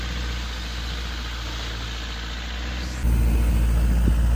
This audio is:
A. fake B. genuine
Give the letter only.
B